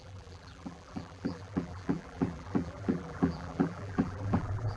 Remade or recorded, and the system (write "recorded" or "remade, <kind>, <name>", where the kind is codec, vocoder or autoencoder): remade, vocoder, BigVGAN v2